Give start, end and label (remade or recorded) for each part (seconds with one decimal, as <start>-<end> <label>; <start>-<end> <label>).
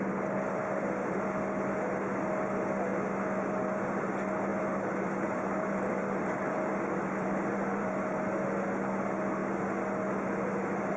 0.0-4.5 recorded; 4.5-7.9 remade; 7.9-11.0 recorded